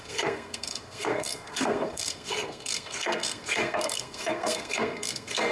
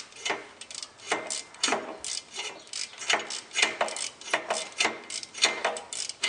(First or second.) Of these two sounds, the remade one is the first